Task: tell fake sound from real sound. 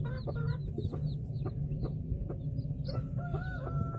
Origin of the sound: real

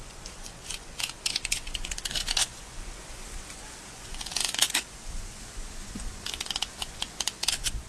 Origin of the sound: fake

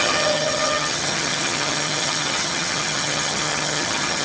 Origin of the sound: fake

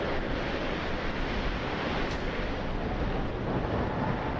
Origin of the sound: real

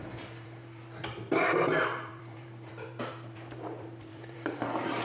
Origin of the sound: fake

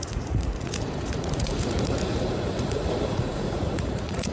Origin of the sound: fake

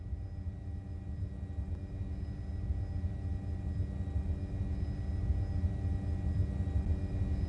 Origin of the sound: real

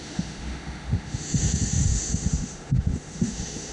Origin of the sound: fake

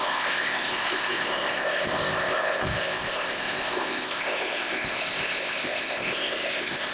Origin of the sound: fake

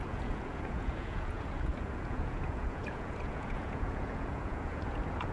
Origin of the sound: fake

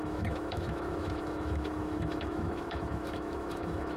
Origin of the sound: fake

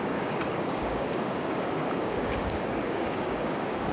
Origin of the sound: fake